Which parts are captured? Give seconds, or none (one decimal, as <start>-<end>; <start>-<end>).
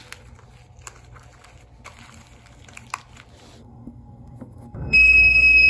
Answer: 0.0-3.6